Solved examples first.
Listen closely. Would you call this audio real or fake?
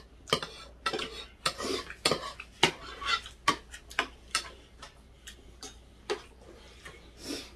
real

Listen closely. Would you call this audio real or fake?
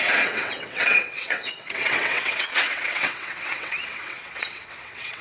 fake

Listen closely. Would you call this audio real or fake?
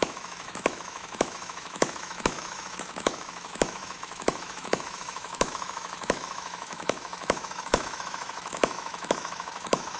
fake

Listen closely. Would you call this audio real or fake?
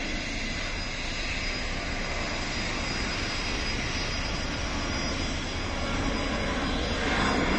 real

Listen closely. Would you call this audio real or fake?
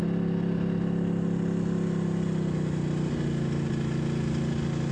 real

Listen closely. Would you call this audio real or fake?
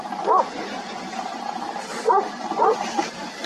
fake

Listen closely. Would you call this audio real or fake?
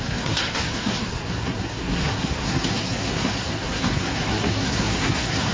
fake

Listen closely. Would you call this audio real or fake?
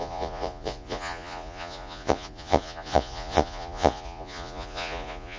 fake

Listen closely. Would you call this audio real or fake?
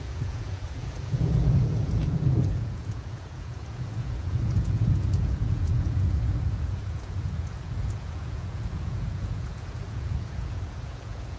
fake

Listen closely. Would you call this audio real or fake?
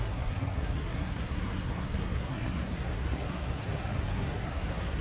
fake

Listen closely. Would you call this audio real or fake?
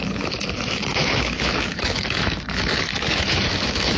fake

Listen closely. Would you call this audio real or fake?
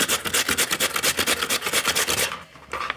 real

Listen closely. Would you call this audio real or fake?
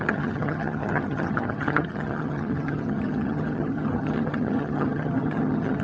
fake